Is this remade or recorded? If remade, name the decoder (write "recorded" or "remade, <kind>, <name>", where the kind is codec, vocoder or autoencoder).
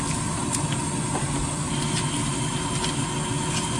recorded